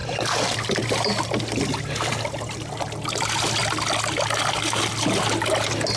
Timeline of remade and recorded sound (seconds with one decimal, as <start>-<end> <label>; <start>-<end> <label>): 0.0-6.0 recorded